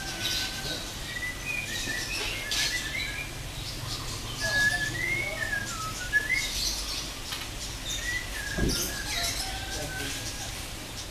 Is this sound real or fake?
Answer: real